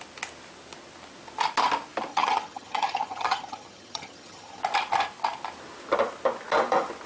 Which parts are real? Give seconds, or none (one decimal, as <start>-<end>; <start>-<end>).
0.0-2.1; 4.6-7.1